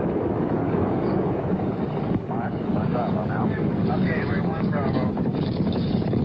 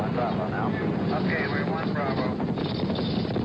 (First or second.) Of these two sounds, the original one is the second